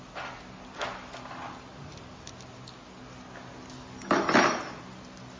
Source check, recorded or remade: recorded